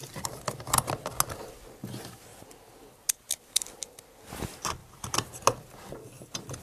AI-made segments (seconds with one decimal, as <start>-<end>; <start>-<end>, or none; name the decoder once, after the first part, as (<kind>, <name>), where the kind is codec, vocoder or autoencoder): 0.0-0.6 (vocoder, BigVGAN v2); 2.3-3.8; 4.8-5.4

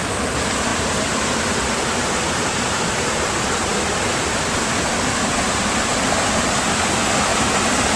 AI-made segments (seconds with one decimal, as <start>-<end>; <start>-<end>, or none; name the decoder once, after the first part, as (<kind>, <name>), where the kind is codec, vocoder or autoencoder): 3.7-5.9 (vocoder, BigVGAN v2); 7.3-8.0

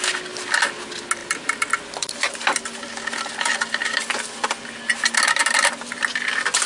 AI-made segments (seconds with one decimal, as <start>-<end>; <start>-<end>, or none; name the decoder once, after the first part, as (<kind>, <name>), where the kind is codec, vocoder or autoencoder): 1.2-4.5 (vocoder, BigVGAN v2)

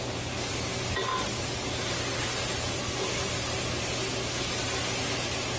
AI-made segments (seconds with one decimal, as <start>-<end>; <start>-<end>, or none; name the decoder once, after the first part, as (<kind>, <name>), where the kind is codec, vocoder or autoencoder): none

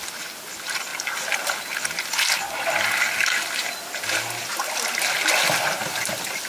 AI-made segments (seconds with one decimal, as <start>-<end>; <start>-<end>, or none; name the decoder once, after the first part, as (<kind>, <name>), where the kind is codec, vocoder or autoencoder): none

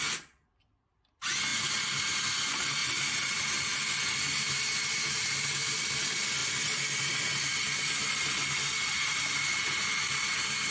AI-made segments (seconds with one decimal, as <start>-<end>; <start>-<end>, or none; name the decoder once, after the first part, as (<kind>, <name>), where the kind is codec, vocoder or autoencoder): 6.4-7.0 (vocoder, BigVGAN v2)

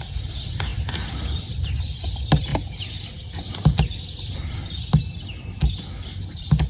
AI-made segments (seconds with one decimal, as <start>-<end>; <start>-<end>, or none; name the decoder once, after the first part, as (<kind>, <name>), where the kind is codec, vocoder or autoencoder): none

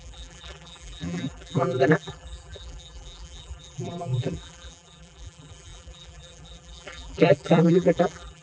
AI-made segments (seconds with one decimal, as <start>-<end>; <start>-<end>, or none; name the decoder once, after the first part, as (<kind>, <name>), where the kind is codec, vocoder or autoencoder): 0.0-8.4 (vocoder, BigVGAN v2)